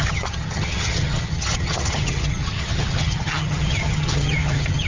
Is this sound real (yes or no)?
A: no